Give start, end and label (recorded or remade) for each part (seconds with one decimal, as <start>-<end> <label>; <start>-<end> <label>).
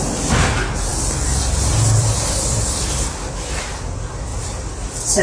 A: 0.0-0.9 recorded; 0.9-3.7 remade; 3.7-5.2 recorded